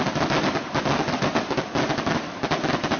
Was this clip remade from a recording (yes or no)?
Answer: no